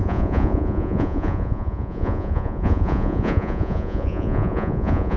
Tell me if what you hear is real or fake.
fake